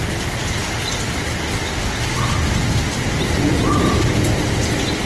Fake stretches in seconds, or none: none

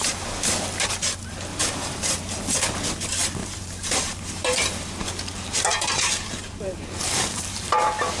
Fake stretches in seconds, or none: 1.5-2.3; 3.4-5.1; 5.7-7.7

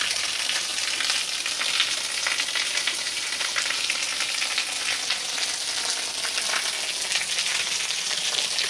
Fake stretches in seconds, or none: 0.0-0.7; 2.8-4.1; 7.3-8.7